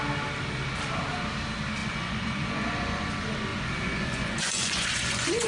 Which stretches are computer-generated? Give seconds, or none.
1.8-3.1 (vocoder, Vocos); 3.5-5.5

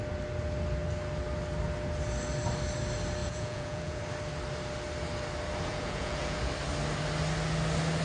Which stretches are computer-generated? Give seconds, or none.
3.2-4.0 (vocoder, Vocos); 5.7-6.4

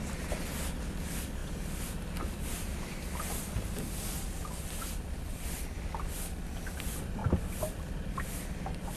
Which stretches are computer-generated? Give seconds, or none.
none

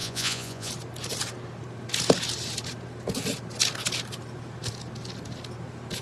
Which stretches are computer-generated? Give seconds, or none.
0.0-0.7 (vocoder, Vocos)